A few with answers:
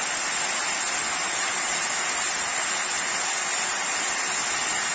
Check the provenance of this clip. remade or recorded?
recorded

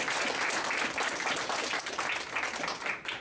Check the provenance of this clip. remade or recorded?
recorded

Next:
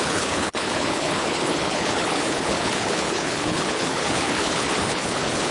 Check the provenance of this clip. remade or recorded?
remade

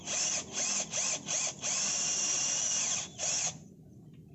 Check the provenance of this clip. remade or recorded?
recorded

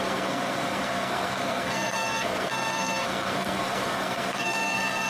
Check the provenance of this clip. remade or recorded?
remade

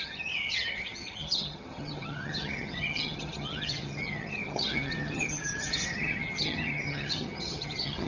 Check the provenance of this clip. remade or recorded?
remade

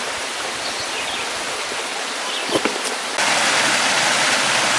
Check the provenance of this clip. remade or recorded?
recorded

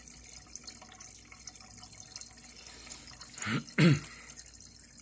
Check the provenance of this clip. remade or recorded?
recorded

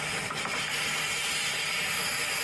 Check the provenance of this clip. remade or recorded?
recorded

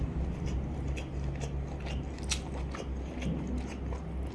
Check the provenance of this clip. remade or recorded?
recorded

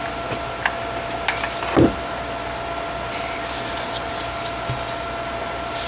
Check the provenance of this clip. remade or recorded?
recorded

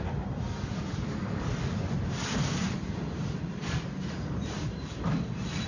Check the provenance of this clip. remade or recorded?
remade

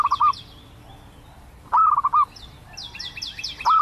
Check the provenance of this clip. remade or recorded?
recorded